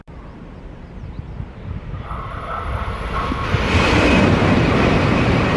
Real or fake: fake